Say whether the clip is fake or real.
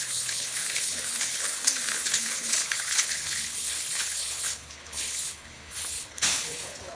fake